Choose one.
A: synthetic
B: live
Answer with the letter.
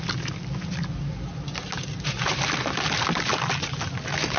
B